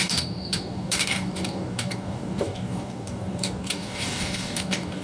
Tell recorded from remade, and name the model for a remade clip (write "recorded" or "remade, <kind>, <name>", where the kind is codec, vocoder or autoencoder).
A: remade, codec, DAC